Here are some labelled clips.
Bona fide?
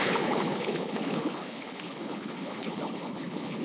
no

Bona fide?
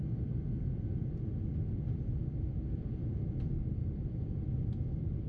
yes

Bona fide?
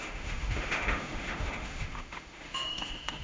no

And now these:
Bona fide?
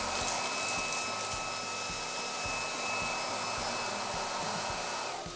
yes